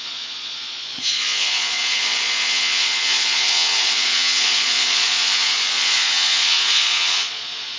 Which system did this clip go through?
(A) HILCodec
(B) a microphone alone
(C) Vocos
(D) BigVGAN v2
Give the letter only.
C